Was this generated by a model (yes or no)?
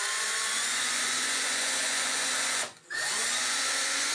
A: yes